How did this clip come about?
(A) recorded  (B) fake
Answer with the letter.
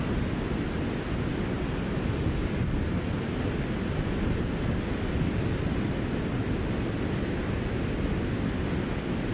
A